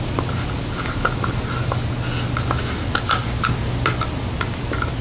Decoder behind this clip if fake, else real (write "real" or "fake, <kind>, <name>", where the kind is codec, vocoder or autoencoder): real